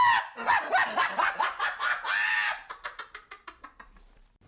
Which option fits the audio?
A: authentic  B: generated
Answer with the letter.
A